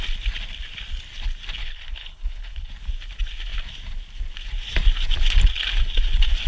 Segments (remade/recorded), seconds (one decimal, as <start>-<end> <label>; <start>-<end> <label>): 0.0-1.6 recorded; 1.6-2.7 remade; 2.7-6.5 recorded